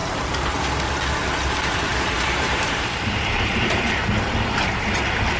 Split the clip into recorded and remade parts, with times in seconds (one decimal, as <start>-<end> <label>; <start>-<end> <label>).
0.0-0.8 remade; 0.8-1.9 recorded; 1.9-4.1 remade; 4.1-5.4 recorded